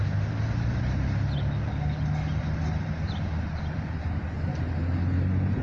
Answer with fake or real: real